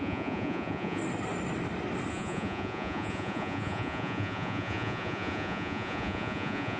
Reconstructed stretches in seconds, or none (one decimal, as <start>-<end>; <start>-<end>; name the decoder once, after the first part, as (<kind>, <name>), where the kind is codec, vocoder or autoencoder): 0.0-1.0 (vocoder, Vocos); 2.1-6.8